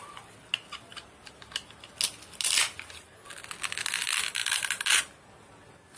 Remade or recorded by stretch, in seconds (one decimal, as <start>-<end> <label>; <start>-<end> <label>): 0.0-6.0 recorded